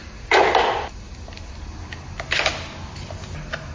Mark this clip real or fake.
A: real